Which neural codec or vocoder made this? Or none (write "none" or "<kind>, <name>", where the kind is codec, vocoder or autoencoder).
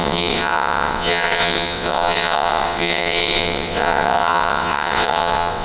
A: vocoder, WaveNeXt